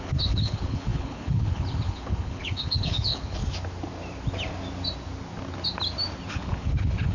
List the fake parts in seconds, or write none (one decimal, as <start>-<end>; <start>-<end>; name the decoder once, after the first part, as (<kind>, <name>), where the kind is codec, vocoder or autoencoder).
0.0-3.4 (codec, HILCodec); 6.3-7.1